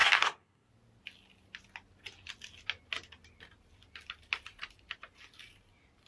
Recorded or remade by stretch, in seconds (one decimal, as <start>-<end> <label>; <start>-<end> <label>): 0.0-0.7 remade; 0.7-6.1 recorded